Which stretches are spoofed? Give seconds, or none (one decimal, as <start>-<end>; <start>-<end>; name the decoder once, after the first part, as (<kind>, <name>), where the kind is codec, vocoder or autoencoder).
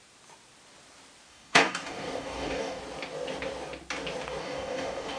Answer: 1.3-2.8 (codec, DAC); 4.4-5.2